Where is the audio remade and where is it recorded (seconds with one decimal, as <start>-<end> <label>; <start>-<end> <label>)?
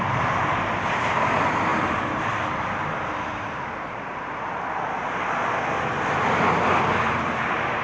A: 0.0-7.8 recorded